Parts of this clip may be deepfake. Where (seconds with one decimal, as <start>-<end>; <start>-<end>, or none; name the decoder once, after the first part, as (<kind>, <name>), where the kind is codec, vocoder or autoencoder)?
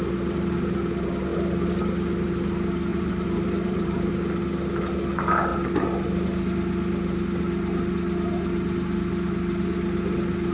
2.9-4.1 (vocoder, BigVGAN v2)